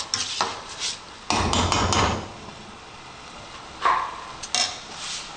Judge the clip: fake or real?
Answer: real